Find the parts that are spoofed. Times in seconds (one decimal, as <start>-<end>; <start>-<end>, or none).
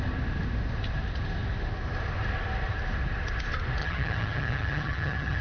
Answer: 3.8-5.4